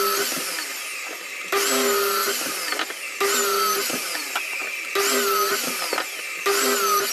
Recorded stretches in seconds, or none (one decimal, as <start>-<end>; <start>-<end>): 0.0-7.1